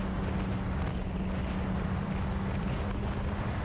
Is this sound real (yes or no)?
yes